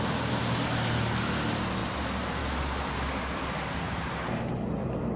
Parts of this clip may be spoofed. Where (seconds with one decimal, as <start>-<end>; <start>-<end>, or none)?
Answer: none